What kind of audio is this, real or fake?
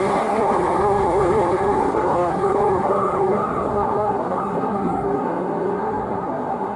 fake